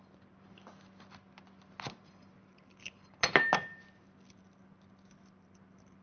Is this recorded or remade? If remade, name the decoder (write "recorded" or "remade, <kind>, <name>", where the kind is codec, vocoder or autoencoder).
recorded